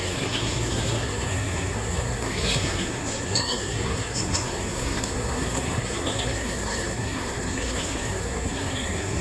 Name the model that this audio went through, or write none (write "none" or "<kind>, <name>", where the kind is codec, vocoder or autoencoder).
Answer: codec, SNAC